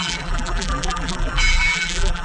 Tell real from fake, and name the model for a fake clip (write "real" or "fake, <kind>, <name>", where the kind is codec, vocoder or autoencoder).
fake, vocoder, BigVGAN v2